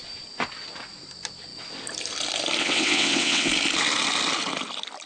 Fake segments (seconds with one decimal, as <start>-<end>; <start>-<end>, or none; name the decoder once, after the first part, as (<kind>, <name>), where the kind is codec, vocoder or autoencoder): 2.6-3.5 (vocoder, WaveNeXt)